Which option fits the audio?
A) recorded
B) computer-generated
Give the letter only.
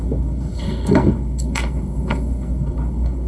B